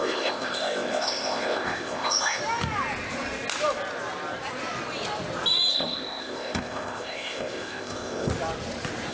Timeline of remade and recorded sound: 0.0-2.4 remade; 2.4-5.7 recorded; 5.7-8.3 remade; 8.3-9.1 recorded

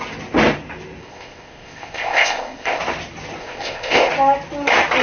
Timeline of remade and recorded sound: 0.0-1.0 recorded; 1.0-2.8 remade; 2.8-3.4 recorded; 3.4-4.1 remade; 4.1-5.0 recorded

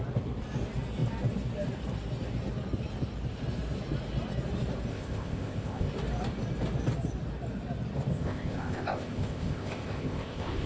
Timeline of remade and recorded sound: 0.0-4.9 recorded; 4.9-5.9 remade; 5.9-8.1 recorded; 8.1-10.7 remade